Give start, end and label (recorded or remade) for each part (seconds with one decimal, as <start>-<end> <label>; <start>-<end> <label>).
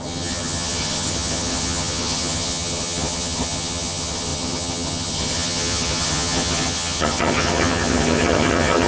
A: 0.0-8.9 remade